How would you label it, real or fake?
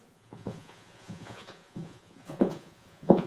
fake